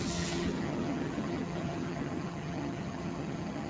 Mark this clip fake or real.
fake